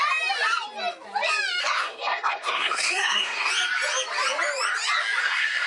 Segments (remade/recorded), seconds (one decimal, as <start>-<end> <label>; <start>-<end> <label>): 0.0-1.6 recorded; 1.6-3.5 remade; 3.5-5.2 recorded; 5.2-5.7 remade